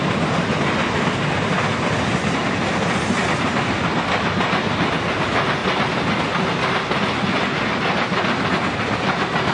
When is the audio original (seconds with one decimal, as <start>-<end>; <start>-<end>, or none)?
0.0-9.5

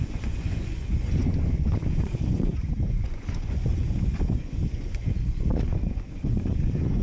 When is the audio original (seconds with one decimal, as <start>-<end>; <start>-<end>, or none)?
none

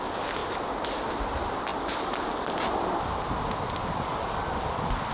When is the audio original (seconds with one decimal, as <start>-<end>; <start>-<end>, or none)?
0.0-5.1